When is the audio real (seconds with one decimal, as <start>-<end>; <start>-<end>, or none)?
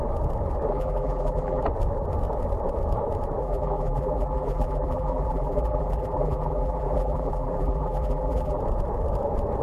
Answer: 0.0-0.7; 1.6-3.4; 8.6-9.6